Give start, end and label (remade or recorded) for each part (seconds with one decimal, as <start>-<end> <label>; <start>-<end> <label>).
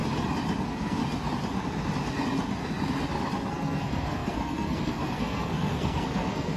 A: 0.0-0.6 recorded; 0.6-1.0 remade; 1.0-3.5 recorded; 3.5-6.6 remade